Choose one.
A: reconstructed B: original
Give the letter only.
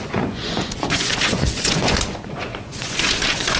A